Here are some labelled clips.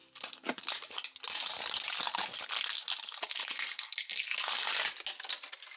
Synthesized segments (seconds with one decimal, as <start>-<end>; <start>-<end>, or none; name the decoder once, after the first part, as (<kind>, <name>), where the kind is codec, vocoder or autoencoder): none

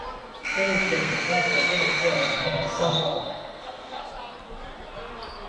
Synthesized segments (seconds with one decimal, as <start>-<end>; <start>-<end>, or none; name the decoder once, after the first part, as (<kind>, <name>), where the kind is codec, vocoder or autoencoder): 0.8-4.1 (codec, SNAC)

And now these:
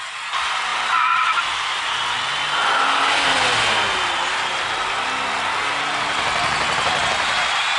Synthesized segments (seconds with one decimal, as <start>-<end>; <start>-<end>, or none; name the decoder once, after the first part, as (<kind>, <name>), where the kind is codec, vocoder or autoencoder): none

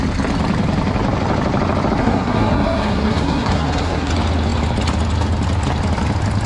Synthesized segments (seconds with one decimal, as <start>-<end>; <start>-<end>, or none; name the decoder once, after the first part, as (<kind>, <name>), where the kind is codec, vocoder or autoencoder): 2.0-4.1 (codec, SNAC)